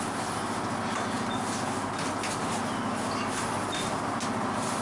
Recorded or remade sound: recorded